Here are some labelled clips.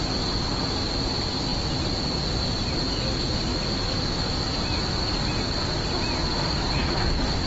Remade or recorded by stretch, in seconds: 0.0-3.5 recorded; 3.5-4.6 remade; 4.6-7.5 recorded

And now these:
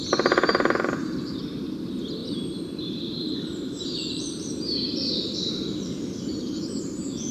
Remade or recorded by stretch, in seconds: 0.0-0.5 recorded; 0.5-1.4 remade; 1.4-2.2 recorded; 2.2-6.6 remade; 6.6-7.3 recorded

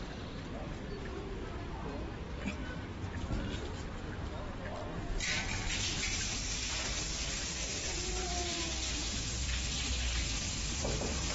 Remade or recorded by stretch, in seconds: 0.0-11.3 recorded

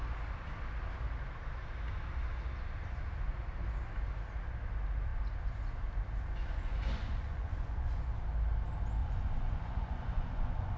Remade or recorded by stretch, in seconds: 0.0-6.4 recorded; 6.4-8.1 remade; 8.1-9.0 recorded; 9.0-10.8 remade

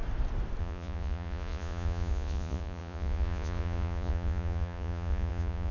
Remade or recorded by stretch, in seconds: 0.0-0.6 recorded; 0.6-5.7 remade

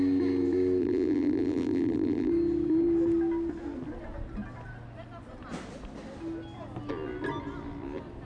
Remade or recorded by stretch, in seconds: 0.0-0.8 recorded; 0.8-2.3 remade; 2.3-8.3 recorded

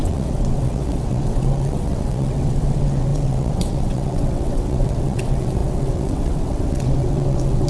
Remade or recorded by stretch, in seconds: 0.0-7.7 remade